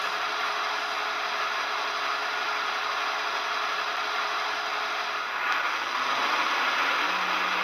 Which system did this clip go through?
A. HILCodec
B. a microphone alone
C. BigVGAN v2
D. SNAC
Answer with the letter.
B